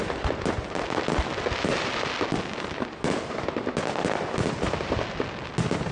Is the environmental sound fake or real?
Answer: real